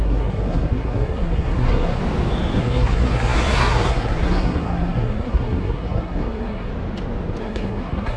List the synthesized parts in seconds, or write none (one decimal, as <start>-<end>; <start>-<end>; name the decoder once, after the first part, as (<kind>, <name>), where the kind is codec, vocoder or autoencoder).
0.0-2.0 (codec, SNAC); 2.6-6.7; 7.4-8.2